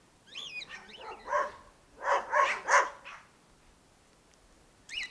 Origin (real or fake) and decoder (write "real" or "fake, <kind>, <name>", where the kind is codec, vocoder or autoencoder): real